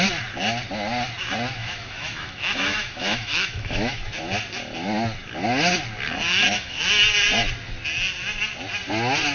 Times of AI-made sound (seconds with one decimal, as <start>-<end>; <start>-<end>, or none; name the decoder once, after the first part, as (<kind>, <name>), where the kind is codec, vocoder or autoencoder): 1.6-4.2 (autoencoder, DAC-VAE); 6.3-6.9